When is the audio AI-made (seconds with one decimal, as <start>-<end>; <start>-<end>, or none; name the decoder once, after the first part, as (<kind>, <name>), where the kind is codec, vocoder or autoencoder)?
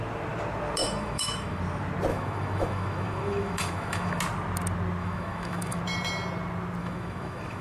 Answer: 0.8-1.6 (autoencoder, DAC-VAE); 2.1-4.2; 5.0-5.8; 6.8-7.6